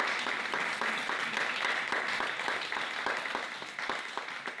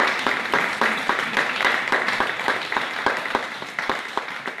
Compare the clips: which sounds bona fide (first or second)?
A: first